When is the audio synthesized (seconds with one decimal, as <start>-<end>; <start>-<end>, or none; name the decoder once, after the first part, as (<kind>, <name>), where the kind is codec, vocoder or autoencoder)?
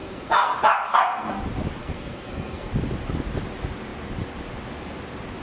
0.0-1.3 (codec, SNAC); 1.8-2.7